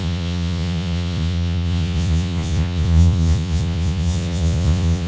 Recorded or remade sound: remade